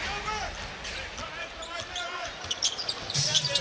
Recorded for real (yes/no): yes